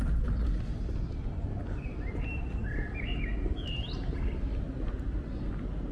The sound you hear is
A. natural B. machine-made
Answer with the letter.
A